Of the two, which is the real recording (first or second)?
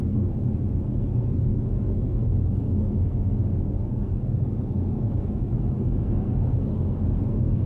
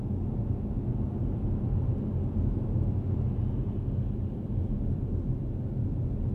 second